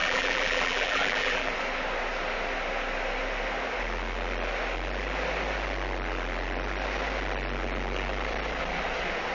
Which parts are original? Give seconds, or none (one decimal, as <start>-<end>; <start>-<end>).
1.5-9.3